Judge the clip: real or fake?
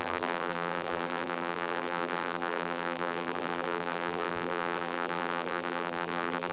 fake